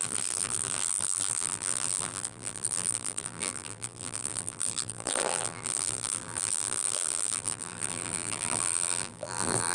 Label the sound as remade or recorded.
remade